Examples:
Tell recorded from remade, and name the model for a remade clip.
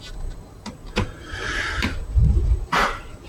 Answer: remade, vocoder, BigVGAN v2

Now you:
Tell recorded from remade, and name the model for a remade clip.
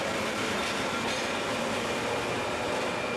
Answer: recorded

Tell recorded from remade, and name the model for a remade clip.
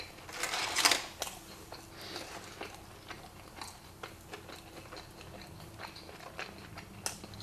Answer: recorded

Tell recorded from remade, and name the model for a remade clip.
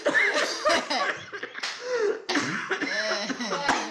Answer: remade, vocoder, BigVGAN v2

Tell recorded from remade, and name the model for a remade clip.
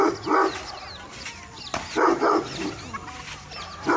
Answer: recorded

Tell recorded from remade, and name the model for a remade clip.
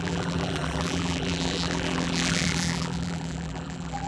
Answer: remade, vocoder, BigVGAN v2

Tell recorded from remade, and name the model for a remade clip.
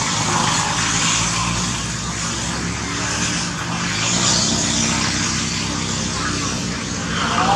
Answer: recorded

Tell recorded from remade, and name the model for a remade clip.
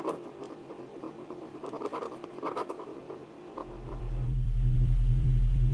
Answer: remade, vocoder, BigVGAN v2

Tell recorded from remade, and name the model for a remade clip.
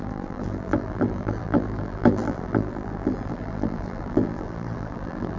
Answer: remade, vocoder, BigVGAN v2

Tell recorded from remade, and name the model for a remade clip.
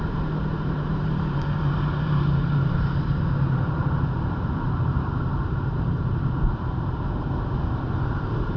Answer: remade, vocoder, BigVGAN v2